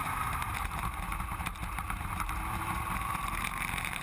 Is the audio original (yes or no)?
no